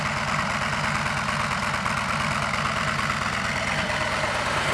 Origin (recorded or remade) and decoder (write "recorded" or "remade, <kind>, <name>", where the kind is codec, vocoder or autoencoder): recorded